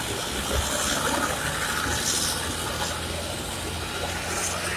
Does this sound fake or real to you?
real